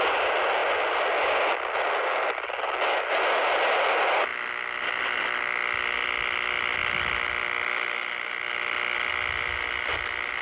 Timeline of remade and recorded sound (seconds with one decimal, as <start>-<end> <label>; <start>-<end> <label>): 0.0-10.4 recorded